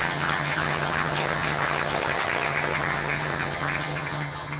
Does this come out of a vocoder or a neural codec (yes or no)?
yes